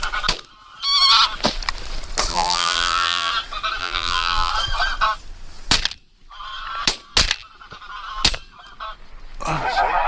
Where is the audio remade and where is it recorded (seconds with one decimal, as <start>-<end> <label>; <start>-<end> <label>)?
0.0-2.3 recorded; 2.3-3.3 remade; 3.3-3.8 recorded; 3.8-4.5 remade; 4.5-10.1 recorded